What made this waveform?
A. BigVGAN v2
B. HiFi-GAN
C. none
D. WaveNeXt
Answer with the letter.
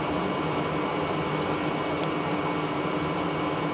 C